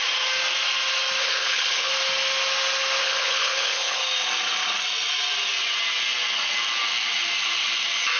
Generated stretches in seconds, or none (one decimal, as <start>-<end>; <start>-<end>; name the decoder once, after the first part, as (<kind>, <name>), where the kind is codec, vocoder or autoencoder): 1.2-1.9 (codec, HILCodec); 3.0-4.0